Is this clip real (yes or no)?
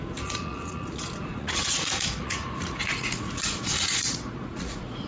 no